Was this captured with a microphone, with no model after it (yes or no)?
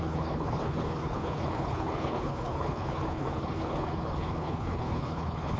no